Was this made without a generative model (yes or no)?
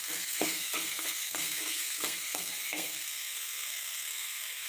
no